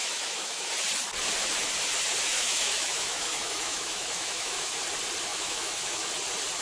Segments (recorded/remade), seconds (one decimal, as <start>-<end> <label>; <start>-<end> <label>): 0.0-0.7 remade; 0.7-2.2 recorded; 2.2-4.8 remade; 4.8-5.3 recorded; 5.3-6.1 remade; 6.1-6.6 recorded